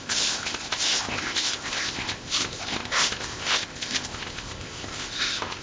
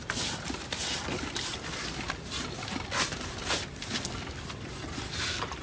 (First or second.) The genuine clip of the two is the second